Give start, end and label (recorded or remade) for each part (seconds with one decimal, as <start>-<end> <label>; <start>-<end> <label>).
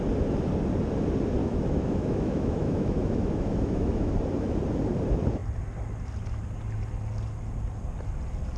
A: 0.0-1.4 recorded; 1.4-4.1 remade; 4.1-8.6 recorded